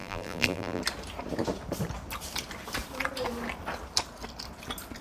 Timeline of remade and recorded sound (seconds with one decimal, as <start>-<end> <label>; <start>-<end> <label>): 0.0-0.8 remade; 0.8-5.0 recorded